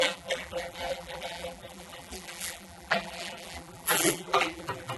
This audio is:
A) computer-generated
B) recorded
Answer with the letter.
A